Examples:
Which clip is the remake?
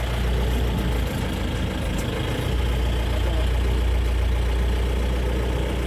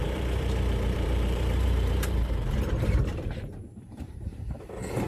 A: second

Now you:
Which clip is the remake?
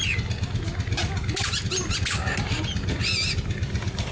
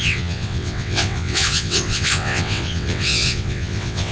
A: second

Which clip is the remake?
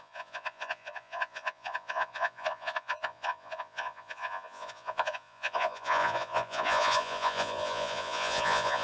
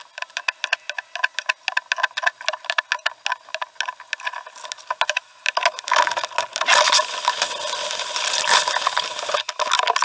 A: first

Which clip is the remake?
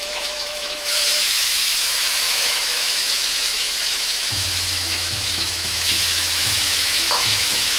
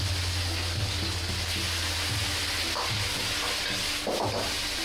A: first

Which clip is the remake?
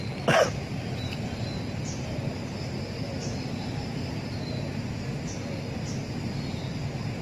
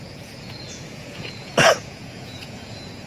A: second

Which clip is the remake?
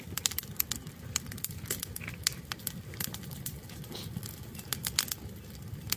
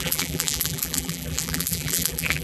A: second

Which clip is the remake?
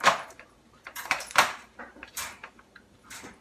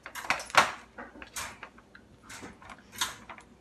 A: first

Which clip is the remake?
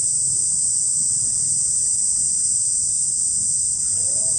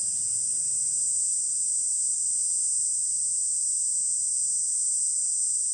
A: first